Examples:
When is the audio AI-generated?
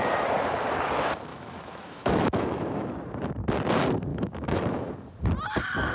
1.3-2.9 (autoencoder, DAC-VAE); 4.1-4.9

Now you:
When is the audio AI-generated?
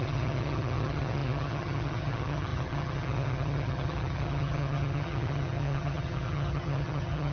0.0-7.3 (vocoder, HiFi-GAN)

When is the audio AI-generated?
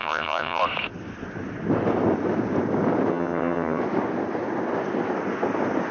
0.0-0.6 (vocoder, HiFi-GAN); 3.1-3.8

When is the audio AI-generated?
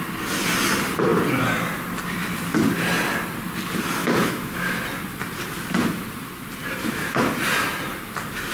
4.0-4.7 (autoencoder, DAC-VAE); 6.8-7.3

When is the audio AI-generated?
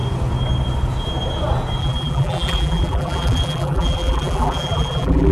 1.8-5.3 (vocoder, BigVGAN v2)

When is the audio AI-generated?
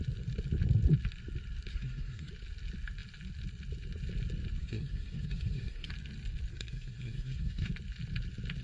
1.7-2.3 (codec, SNAC); 4.6-5.9; 6.5-7.7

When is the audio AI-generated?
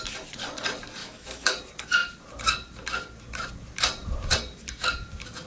1.0-1.6 (autoencoder, DAC-VAE)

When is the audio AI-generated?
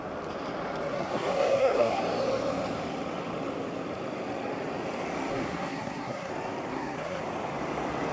0.9-2.0 (codec, SNAC); 5.3-6.3; 6.7-7.2